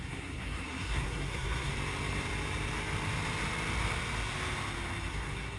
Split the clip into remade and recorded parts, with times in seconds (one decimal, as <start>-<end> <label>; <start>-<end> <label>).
0.0-1.7 remade; 1.7-5.1 recorded; 5.1-5.6 remade